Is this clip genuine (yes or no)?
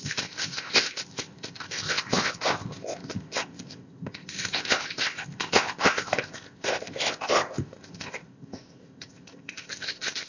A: no